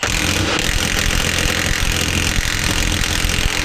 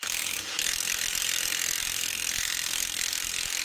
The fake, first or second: second